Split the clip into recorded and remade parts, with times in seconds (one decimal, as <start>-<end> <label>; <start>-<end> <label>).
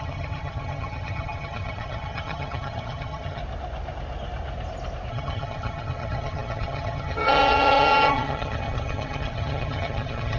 0.0-3.4 remade; 3.4-5.1 recorded; 5.1-10.4 remade